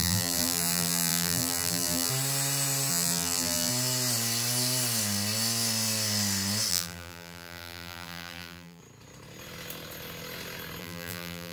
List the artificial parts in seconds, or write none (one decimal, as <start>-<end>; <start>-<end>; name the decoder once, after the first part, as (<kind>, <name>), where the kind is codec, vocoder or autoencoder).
0.0-2.1 (vocoder, BigVGAN v2); 2.9-3.7; 6.7-8.8; 10.8-11.5